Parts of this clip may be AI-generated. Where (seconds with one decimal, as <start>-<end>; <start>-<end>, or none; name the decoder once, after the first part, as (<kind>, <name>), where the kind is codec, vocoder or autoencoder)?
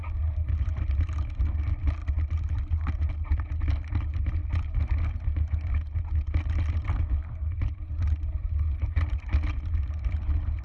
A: none